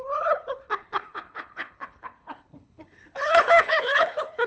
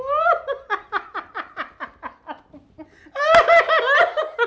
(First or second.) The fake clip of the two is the first